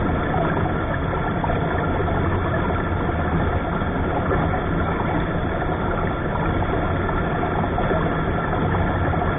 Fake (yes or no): no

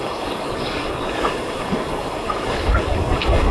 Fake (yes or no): yes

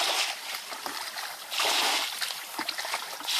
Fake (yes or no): no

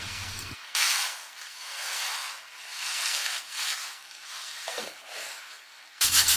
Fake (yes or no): yes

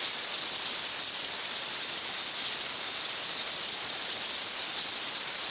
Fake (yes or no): yes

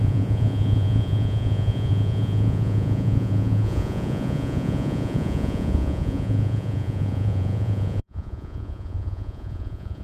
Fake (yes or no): yes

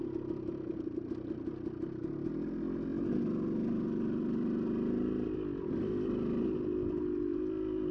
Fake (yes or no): no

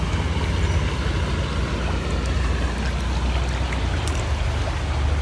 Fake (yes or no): no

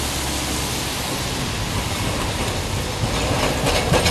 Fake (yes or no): no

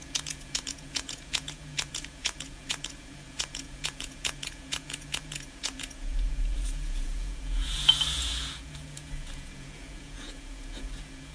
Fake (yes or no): yes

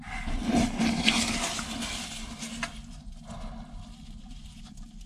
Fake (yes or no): no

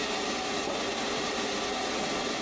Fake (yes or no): no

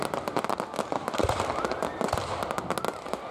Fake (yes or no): no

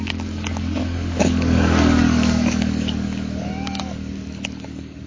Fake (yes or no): yes